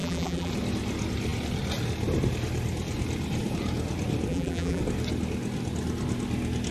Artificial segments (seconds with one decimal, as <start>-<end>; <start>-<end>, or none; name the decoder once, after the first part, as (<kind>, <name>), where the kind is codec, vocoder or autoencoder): 0.0-0.5 (vocoder, BigVGAN v2); 4.3-4.8